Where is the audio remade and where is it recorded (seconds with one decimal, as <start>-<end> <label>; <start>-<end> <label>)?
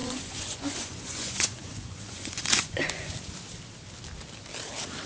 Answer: 0.0-3.1 remade; 3.1-5.1 recorded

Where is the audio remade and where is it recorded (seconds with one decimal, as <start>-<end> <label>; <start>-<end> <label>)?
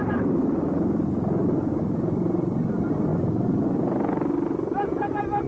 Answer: 0.0-5.5 recorded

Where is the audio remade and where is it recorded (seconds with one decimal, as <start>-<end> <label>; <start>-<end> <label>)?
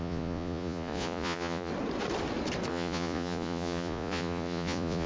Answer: 0.0-1.7 remade; 1.7-2.7 recorded; 2.7-5.1 remade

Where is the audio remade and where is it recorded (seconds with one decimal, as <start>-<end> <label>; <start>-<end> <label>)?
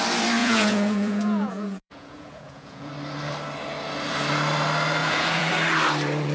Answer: 0.0-0.4 recorded; 0.4-2.9 remade; 2.9-5.0 recorded; 5.0-5.5 remade; 5.5-6.3 recorded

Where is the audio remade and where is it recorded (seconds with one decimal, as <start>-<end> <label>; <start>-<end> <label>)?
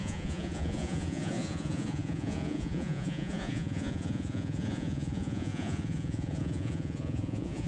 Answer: 0.0-7.7 remade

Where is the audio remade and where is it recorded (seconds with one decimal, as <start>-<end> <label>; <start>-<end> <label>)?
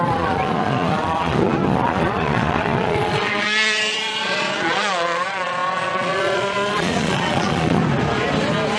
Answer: 0.0-7.8 remade; 7.8-8.8 recorded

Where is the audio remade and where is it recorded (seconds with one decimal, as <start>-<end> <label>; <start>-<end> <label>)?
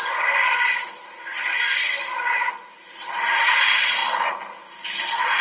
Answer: 0.0-5.4 recorded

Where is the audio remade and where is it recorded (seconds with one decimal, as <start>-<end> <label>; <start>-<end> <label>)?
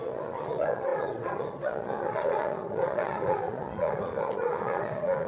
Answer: 0.0-5.3 remade